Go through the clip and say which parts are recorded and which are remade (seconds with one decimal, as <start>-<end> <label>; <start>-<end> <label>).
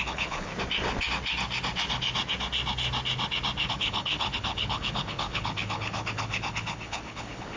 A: 0.0-0.5 remade; 0.5-3.7 recorded; 3.7-7.6 remade